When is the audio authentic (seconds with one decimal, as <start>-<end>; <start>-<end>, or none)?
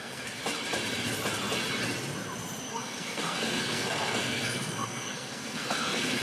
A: 0.4-2.7